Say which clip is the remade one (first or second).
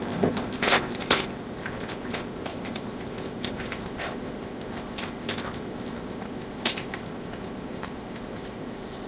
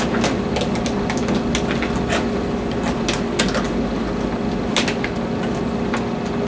first